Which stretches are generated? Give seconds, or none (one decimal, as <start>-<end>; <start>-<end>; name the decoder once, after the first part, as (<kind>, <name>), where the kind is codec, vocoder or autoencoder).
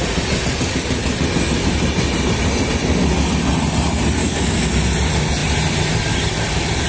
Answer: 4.2-4.7 (codec, DAC)